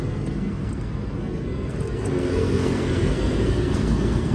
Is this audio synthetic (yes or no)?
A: yes